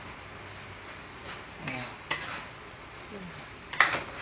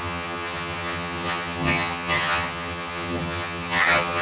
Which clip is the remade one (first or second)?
second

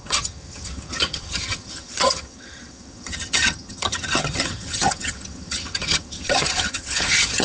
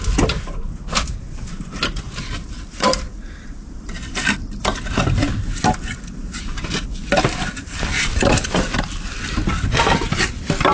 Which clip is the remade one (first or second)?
first